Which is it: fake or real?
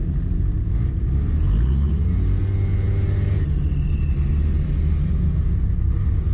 real